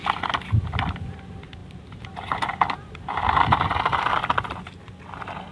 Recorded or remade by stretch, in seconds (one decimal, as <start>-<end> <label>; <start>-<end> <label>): 0.0-1.6 recorded; 1.6-4.9 remade; 4.9-5.5 recorded

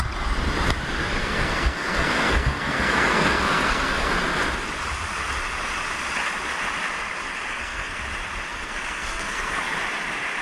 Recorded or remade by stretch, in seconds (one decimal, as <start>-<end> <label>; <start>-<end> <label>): 0.0-1.2 recorded; 1.2-4.1 remade; 4.1-7.5 recorded; 7.5-8.0 remade; 8.0-8.5 recorded; 8.5-9.6 remade; 9.6-10.4 recorded